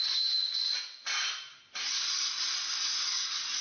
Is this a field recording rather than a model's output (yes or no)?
yes